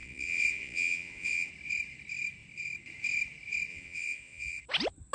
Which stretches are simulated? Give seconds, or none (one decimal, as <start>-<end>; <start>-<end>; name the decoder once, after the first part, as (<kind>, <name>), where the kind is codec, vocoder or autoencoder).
0.0-1.5 (vocoder, Vocos); 3.7-4.6